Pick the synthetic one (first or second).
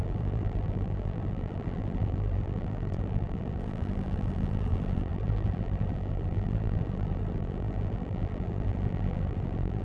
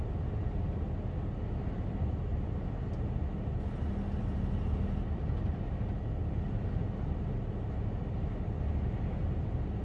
first